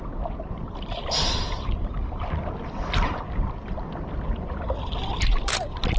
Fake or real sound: real